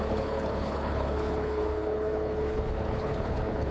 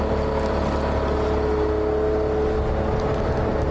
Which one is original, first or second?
second